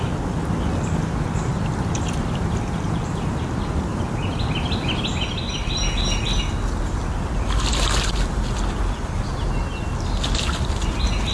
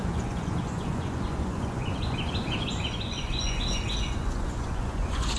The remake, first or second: second